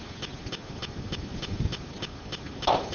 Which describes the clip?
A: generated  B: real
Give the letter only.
B